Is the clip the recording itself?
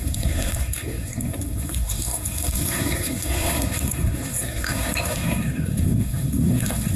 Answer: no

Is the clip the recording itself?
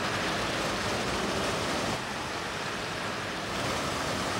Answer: yes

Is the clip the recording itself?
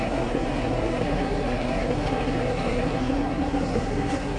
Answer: no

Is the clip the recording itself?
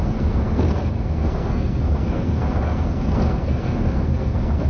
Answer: no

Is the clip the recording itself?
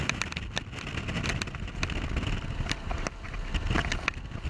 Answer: yes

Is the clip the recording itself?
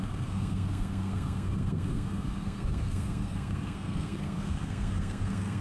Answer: no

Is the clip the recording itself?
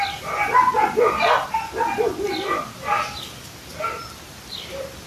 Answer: yes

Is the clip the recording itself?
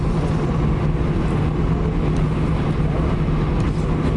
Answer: yes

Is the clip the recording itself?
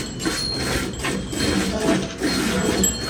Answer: yes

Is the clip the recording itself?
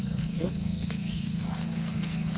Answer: no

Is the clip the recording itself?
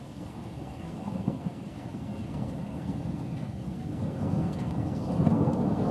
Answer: no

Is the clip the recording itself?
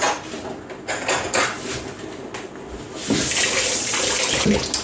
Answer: yes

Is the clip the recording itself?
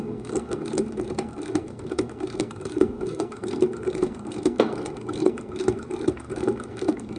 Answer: no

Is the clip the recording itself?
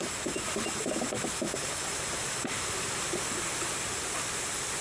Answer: yes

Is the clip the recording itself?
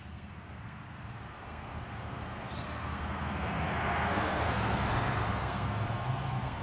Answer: no